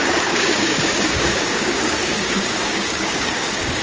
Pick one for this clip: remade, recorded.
remade